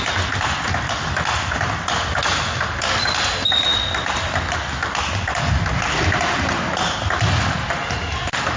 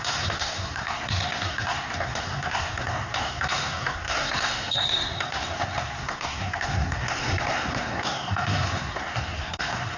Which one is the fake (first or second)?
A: second